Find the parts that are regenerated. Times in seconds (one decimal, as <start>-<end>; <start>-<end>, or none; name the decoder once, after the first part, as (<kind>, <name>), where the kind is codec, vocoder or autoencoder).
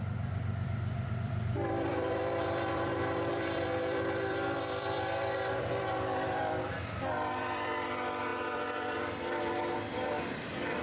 0.0-10.8 (vocoder, BigVGAN v2)